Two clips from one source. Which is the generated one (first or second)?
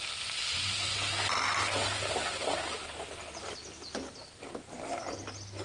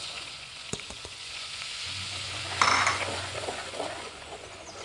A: second